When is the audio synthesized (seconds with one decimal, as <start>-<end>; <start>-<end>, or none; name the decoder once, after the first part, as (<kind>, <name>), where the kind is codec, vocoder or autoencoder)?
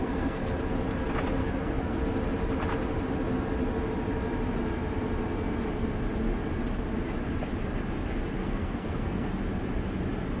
0.0-0.5 (codec, SNAC); 1.4-2.0; 8.4-9.3